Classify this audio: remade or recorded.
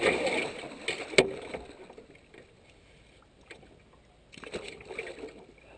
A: recorded